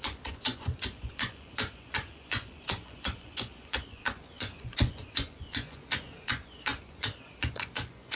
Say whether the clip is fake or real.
fake